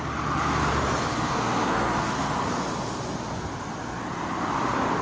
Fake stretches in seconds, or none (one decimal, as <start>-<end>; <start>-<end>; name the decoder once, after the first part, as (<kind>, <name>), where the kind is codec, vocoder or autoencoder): 1.1-2.4 (codec, SNAC)

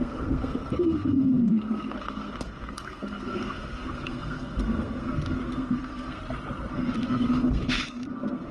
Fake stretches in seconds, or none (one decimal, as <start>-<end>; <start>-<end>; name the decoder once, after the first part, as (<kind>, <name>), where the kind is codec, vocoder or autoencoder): 0.0-6.2 (codec, SNAC); 6.7-8.5

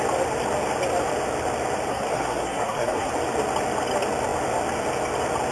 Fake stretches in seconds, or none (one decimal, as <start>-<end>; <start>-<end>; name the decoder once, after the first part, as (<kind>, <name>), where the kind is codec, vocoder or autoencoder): 1.9-3.1 (codec, SNAC)

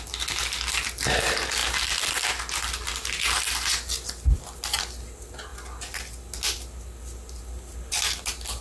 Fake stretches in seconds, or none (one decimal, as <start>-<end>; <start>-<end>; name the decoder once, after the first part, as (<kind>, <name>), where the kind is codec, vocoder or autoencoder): none

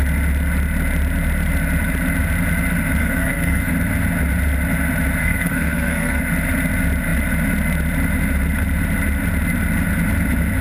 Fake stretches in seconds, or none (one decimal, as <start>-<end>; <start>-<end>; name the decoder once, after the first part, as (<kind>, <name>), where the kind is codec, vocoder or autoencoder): 3.0-3.7 (codec, SNAC); 5.2-6.2

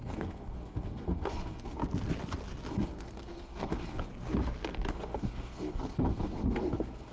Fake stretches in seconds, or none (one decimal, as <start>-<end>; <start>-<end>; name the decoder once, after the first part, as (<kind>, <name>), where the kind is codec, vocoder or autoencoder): 0.0-1.8 (codec, SNAC); 2.7-4.1; 4.9-7.1